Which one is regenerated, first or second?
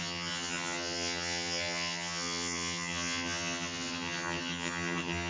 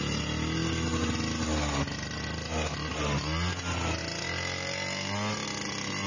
first